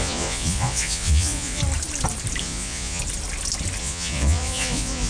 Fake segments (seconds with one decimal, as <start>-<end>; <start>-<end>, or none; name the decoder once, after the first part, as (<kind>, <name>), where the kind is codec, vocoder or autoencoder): 0.0-1.6 (vocoder, Vocos); 2.4-3.0; 3.8-5.1